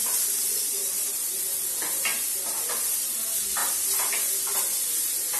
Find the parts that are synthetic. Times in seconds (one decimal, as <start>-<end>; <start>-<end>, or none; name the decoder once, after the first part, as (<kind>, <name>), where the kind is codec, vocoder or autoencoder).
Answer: 0.0-1.4 (vocoder, BigVGAN v2); 2.1-3.2; 3.6-4.1